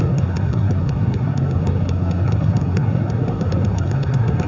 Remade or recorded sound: remade